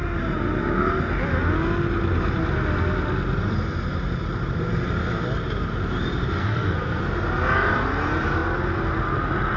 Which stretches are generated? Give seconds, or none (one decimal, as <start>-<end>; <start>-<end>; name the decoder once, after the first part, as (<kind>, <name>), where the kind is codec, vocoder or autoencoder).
6.4-7.0 (codec, SNAC)